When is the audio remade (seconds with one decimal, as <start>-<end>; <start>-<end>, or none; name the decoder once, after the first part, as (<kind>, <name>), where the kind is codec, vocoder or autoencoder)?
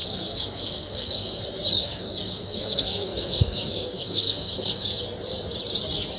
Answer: 0.0-1.4 (codec, SNAC); 1.8-5.0